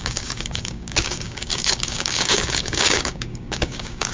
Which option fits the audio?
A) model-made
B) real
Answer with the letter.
A